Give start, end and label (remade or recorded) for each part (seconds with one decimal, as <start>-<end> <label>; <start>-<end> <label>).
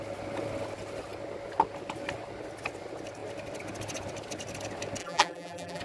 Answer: 0.0-5.0 recorded; 5.0-5.8 remade